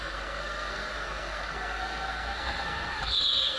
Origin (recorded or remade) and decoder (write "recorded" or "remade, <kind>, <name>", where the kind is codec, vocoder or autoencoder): remade, codec, SNAC